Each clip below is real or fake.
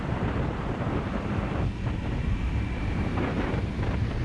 fake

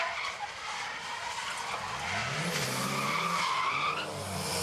real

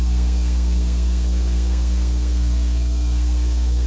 fake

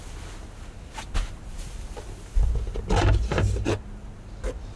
real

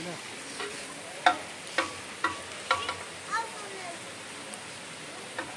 real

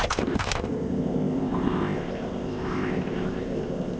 fake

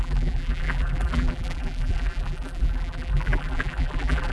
fake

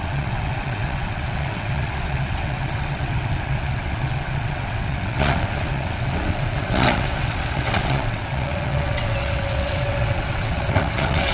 fake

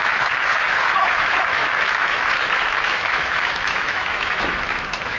fake